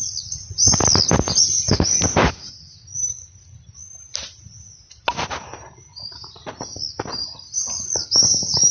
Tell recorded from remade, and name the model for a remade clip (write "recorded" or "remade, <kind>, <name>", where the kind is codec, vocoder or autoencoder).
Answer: recorded